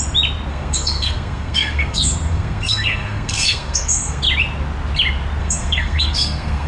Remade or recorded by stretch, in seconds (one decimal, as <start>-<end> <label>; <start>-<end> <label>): 0.0-0.5 recorded; 0.5-4.2 remade; 4.2-5.4 recorded; 5.4-6.7 remade